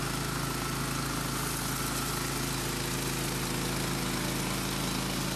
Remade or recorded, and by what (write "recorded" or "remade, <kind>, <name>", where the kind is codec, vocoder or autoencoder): recorded